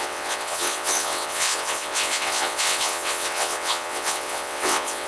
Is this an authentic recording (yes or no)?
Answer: no